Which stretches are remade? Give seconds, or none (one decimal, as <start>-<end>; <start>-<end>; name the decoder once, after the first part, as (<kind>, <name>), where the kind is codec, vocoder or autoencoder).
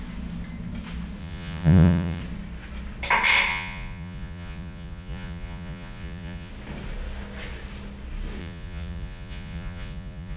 1.2-2.2 (vocoder, Vocos); 3.5-6.5; 8.4-10.4